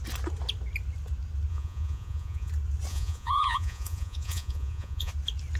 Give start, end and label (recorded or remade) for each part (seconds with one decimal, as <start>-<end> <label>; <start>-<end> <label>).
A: 0.0-1.5 recorded; 1.5-2.5 remade; 2.5-2.9 recorded; 2.9-5.1 remade; 5.1-5.6 recorded